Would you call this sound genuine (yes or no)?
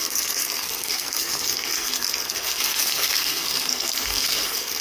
no